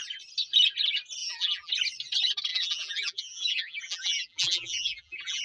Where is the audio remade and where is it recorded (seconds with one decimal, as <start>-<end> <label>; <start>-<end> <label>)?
0.0-1.2 recorded; 1.2-1.7 remade; 1.7-2.5 recorded; 2.5-5.4 remade